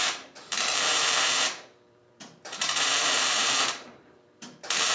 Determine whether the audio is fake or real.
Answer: fake